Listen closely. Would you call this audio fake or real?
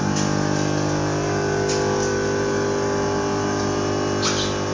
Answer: real